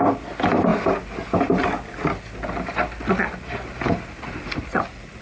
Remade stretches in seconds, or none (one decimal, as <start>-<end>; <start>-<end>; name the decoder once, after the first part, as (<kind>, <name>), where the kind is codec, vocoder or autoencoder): none